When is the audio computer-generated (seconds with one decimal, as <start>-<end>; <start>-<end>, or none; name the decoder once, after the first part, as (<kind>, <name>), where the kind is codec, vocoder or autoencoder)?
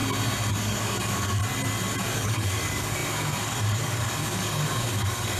0.5-1.4 (codec, DAC); 2.0-5.4